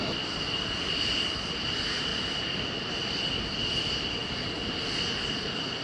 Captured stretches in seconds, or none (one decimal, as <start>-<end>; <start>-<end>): 4.2-5.8